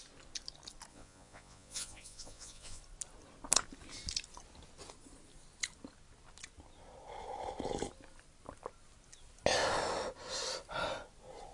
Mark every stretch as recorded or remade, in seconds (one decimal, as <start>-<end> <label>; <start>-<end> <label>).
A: 0.0-0.9 recorded; 0.9-2.8 remade; 2.8-11.5 recorded